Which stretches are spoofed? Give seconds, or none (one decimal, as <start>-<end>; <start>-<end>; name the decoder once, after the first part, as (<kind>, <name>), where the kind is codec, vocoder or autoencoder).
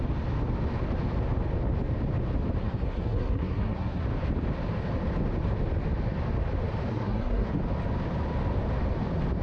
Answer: 2.6-4.0 (codec, SNAC); 6.9-7.5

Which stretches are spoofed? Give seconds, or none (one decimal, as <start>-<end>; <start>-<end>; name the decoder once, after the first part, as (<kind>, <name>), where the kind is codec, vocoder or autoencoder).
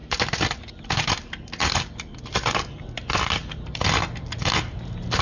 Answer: none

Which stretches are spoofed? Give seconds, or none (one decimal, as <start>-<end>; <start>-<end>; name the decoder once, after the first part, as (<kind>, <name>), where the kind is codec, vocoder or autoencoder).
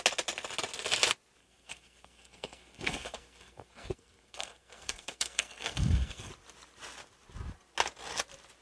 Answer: 1.4-6.3 (codec, SNAC)